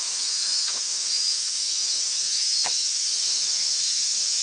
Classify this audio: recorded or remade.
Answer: remade